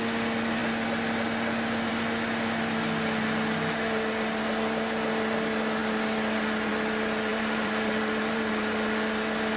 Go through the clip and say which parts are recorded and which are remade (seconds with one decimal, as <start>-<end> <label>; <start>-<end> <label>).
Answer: 0.0-7.3 recorded; 7.3-8.5 remade; 8.5-9.6 recorded